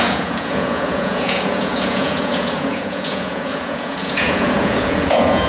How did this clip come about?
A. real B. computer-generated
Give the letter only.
B